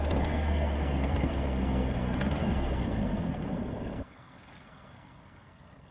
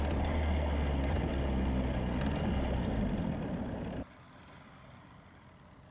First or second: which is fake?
first